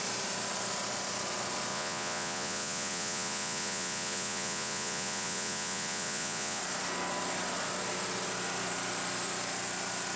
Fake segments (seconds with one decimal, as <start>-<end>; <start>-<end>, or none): 1.7-6.6